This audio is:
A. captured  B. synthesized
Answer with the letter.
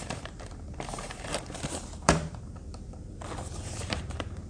B